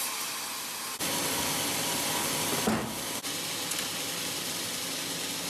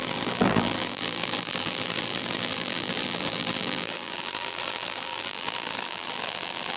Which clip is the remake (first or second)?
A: second